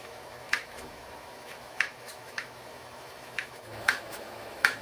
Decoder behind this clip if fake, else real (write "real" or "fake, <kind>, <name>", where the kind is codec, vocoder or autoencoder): fake, autoencoder, DAC-VAE